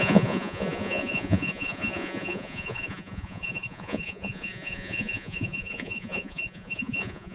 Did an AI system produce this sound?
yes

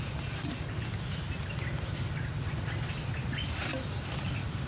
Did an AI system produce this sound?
no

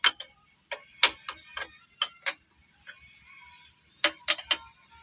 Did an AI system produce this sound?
no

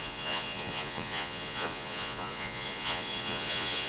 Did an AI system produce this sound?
yes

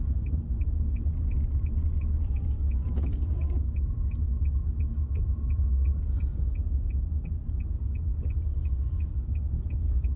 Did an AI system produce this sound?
no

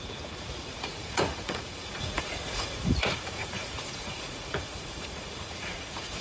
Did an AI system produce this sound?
yes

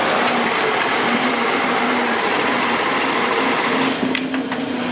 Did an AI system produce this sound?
no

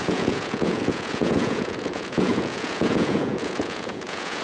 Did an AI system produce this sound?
yes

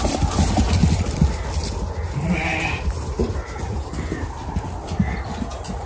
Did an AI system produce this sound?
no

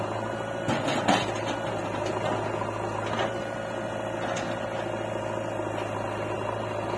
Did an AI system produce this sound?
no